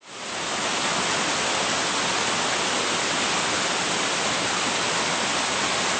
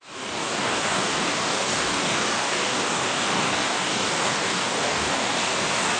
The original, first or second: first